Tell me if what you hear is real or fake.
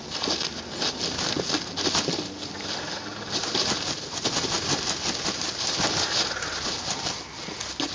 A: real